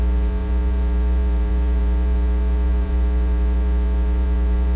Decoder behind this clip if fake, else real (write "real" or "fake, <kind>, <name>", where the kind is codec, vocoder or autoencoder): fake, vocoder, Vocos